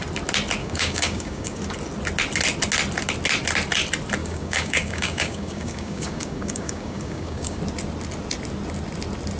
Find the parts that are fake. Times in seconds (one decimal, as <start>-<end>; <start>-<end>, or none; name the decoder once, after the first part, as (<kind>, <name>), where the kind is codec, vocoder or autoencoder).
0.6-1.6 (codec, DAC); 4.2-7.6